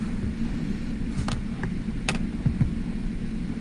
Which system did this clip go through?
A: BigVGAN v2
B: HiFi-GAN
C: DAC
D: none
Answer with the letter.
D